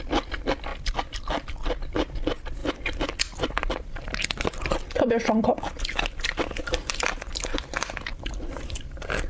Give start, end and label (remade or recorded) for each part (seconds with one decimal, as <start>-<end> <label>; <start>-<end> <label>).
0.0-0.7 remade; 0.7-1.8 recorded; 1.8-2.6 remade; 2.6-3.7 recorded; 3.7-9.3 remade